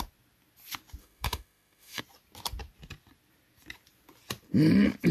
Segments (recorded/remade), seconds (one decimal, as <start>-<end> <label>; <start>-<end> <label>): 0.0-1.0 recorded; 1.0-2.0 remade; 2.0-5.1 recorded